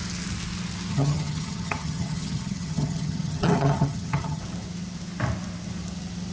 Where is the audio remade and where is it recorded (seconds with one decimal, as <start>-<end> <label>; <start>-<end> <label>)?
0.0-0.9 recorded; 0.9-4.4 remade; 4.4-6.3 recorded